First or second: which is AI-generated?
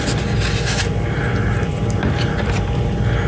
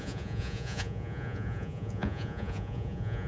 second